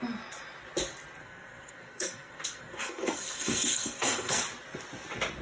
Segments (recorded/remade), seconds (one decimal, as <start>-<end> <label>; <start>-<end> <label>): 0.0-1.2 recorded; 1.2-4.4 remade; 4.4-5.4 recorded